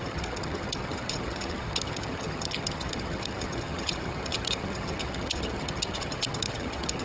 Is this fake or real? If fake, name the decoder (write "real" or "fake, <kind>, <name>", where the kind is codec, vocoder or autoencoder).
fake, vocoder, HiFi-GAN